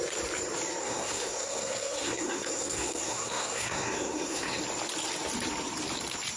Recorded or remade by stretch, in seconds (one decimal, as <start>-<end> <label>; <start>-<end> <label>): 0.0-0.8 recorded; 0.8-4.6 remade; 4.6-6.4 recorded